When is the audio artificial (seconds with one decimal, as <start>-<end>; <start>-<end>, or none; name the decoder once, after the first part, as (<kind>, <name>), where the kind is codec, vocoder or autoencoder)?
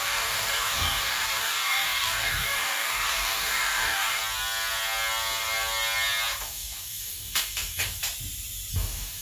0.0-4.2 (codec, DAC); 6.4-8.0; 8.7-9.2